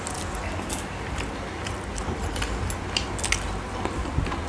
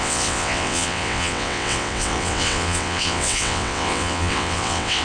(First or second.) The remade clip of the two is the second